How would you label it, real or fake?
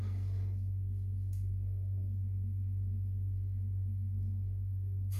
fake